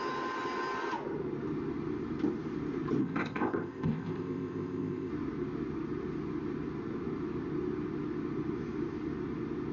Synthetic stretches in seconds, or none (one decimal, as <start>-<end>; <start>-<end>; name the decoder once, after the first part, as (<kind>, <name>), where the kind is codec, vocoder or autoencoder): 3.0-5.1 (codec, ZipCodec)

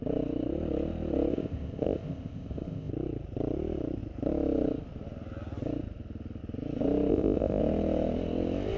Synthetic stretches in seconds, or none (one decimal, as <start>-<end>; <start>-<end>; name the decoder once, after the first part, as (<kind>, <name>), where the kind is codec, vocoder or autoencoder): 1.3-2.9 (codec, ZipCodec); 7.1-7.6

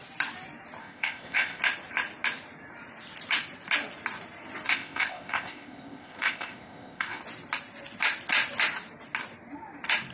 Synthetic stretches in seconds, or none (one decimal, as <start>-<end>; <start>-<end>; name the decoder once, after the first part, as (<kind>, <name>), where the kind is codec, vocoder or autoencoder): 0.8-1.6 (codec, ZipCodec); 4.7-7.2

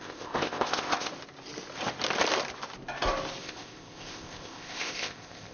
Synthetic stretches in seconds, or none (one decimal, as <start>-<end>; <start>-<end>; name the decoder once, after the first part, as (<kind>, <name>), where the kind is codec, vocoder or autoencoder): 0.0-1.1 (codec, ZipCodec); 3.4-5.5

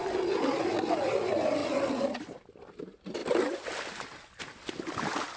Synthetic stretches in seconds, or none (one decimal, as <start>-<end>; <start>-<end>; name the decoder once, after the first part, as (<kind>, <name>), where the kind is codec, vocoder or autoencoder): none